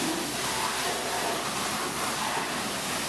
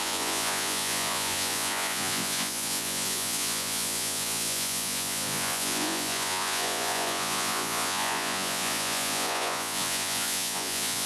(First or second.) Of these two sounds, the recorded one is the first